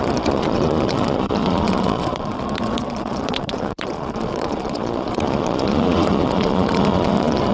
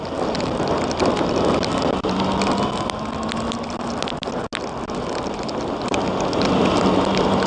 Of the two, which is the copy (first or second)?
first